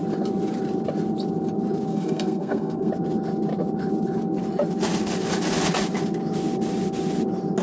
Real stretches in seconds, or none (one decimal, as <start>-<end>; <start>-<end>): 0.0-1.9; 2.9-7.6